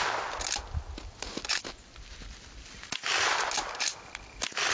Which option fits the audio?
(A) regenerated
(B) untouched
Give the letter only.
B